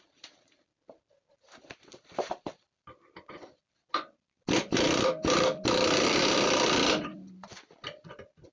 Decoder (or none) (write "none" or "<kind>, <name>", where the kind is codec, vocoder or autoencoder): none